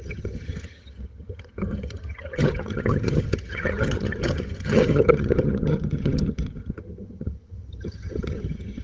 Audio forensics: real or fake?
fake